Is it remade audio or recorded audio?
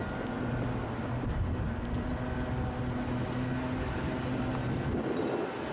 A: recorded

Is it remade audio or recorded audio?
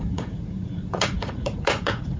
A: remade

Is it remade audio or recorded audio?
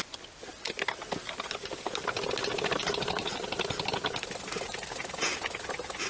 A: recorded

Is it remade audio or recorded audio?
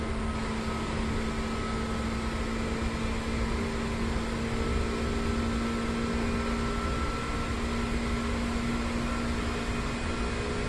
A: recorded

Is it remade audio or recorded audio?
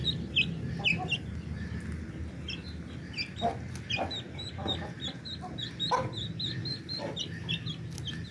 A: recorded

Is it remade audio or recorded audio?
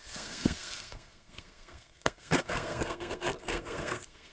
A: remade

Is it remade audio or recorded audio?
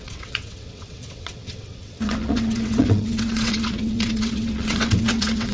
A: remade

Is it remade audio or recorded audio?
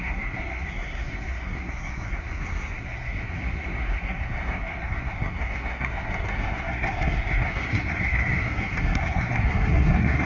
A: remade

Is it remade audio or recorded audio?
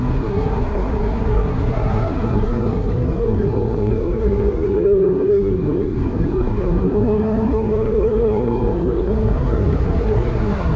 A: remade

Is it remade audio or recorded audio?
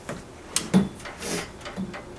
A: recorded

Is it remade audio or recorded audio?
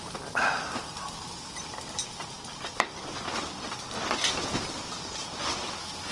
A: recorded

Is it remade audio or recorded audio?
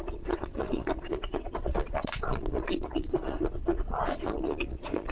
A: remade